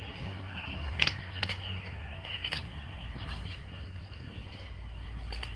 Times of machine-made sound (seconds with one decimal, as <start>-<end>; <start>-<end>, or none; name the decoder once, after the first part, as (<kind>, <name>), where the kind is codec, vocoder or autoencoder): 0.0-5.6 (codec, SNAC)

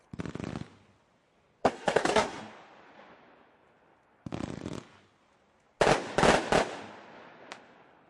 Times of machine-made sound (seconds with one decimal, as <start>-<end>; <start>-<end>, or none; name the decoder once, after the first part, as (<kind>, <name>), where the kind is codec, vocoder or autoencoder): 1.6-2.4 (codec, SNAC)